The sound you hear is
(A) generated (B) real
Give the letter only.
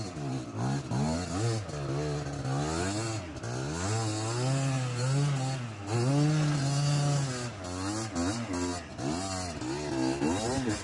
B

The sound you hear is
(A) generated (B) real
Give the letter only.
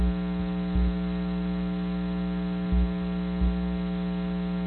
B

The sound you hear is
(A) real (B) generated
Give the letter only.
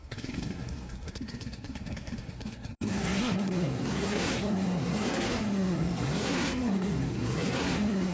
B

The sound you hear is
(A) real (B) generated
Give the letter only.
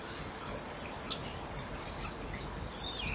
B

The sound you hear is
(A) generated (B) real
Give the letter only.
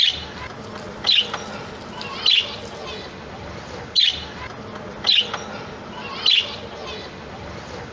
B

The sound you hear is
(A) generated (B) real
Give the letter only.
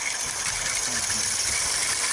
B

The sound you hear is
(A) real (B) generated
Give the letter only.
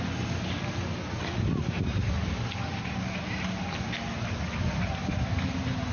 A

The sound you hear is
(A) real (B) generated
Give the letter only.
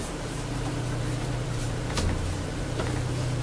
B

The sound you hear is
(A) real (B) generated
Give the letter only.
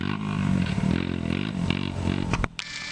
A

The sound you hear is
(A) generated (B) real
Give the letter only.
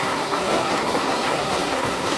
A